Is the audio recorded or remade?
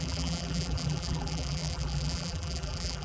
remade